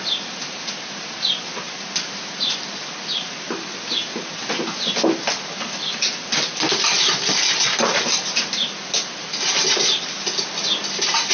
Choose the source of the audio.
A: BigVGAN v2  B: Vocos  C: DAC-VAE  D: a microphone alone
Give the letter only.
D